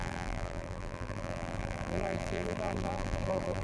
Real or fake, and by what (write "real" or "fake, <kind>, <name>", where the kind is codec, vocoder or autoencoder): fake, vocoder, BigVGAN v2